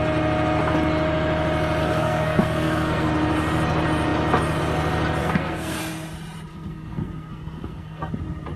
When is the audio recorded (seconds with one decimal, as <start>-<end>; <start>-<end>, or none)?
0.0-1.8; 3.1-5.2; 5.8-6.5; 8.1-8.6